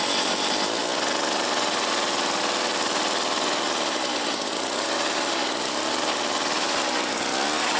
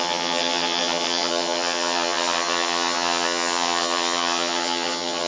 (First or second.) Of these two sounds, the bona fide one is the first